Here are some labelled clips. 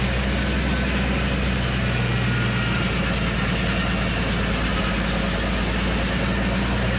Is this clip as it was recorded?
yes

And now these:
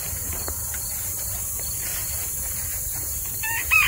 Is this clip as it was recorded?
no